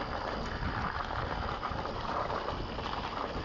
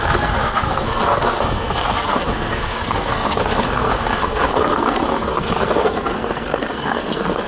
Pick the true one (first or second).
first